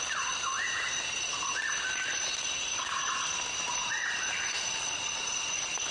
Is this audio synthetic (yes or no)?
no